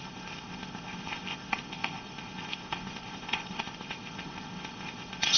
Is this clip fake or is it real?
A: fake